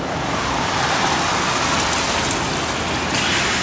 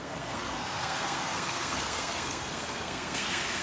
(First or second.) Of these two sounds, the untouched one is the first